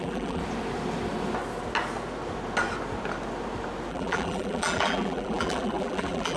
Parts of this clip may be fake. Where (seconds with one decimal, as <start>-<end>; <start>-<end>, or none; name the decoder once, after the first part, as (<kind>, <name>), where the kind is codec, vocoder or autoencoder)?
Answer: 0.0-0.4 (vocoder, BigVGAN v2); 3.9-6.4